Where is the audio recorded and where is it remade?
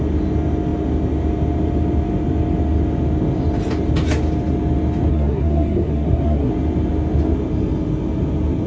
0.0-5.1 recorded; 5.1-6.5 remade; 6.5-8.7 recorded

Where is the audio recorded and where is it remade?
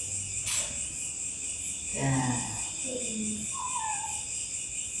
0.0-5.0 recorded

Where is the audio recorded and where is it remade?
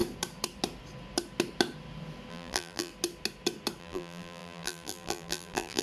0.0-2.3 recorded; 2.3-2.9 remade; 2.9-3.8 recorded; 3.8-5.8 remade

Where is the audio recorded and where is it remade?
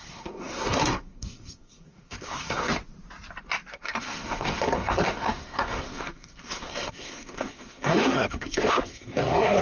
0.0-2.7 remade; 2.7-3.7 recorded; 3.7-9.6 remade